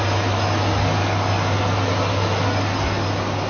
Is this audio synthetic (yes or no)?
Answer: no